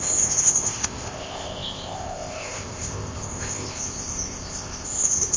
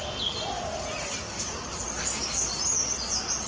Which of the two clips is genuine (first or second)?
second